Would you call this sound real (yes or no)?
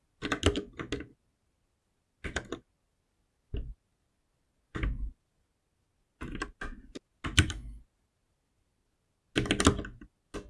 yes